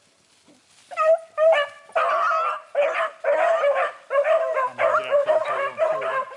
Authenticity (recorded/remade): recorded